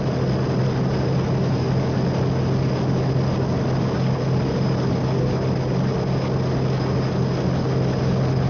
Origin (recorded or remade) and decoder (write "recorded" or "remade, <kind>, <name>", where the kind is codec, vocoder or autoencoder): recorded